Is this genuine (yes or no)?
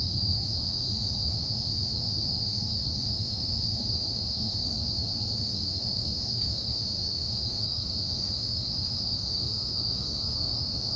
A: no